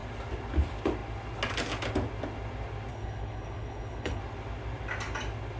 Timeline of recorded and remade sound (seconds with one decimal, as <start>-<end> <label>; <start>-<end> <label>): 0.0-2.9 recorded; 2.9-4.2 remade; 4.2-5.6 recorded